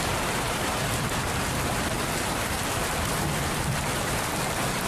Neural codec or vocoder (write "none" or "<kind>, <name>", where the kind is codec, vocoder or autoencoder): vocoder, BigVGAN v2